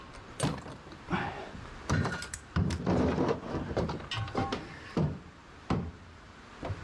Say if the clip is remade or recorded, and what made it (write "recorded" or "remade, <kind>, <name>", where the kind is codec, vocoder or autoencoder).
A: remade, vocoder, BigVGAN v2